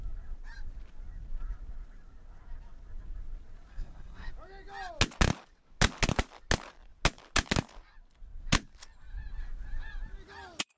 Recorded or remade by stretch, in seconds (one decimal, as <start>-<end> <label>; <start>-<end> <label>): 0.0-3.7 recorded; 3.7-4.3 remade; 4.3-10.8 recorded